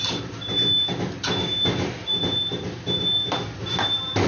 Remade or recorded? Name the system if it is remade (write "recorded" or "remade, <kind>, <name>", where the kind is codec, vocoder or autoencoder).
recorded